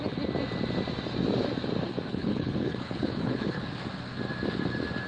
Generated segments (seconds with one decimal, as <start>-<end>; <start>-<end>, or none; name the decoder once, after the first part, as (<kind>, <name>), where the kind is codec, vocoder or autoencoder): 2.1-3.6 (codec, HILCodec)